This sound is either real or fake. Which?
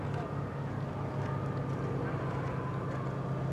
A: real